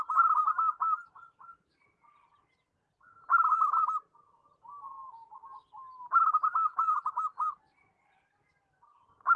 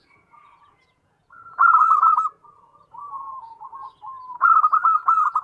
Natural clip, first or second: first